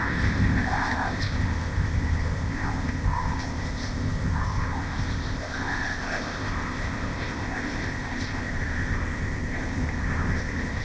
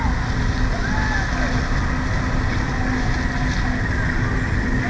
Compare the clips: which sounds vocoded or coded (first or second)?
first